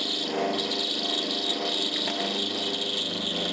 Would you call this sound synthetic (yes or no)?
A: no